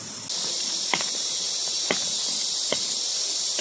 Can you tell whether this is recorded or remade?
recorded